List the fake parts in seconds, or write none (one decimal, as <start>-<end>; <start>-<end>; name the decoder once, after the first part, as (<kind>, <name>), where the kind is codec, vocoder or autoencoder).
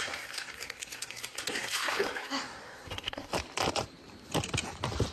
0.0-3.3 (codec, SNAC)